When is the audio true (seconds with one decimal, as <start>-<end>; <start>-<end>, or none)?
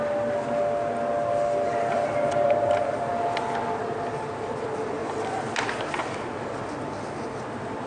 0.0-7.9